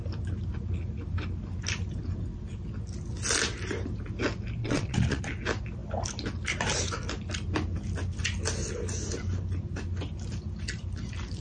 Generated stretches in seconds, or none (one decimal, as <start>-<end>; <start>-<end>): 4.6-5.2